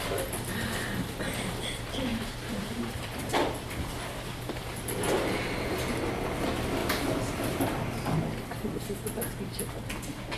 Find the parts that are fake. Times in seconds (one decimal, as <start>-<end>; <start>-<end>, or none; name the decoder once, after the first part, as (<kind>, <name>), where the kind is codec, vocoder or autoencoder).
2.1-3.5 (vocoder, BigVGAN v2); 6.8-7.9